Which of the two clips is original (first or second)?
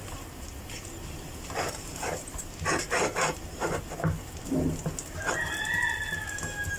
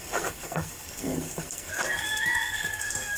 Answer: first